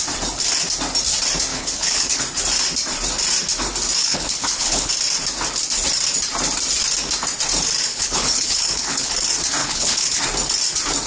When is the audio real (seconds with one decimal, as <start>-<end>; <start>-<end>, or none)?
0.0-1.5; 2.2-4.0; 4.9-7.9; 9.1-9.6; 10.2-11.1